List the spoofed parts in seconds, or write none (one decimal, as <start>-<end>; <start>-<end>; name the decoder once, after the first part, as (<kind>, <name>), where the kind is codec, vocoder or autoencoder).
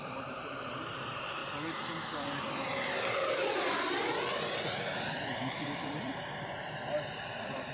0.0-1.4 (vocoder, BigVGAN v2); 6.0-7.7